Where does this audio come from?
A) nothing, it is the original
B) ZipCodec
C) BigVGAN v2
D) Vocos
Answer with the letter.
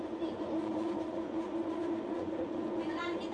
D